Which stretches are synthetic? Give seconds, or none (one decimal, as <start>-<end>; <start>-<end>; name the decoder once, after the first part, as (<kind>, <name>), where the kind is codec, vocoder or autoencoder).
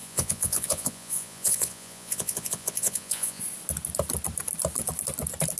0.0-3.4 (vocoder, Vocos)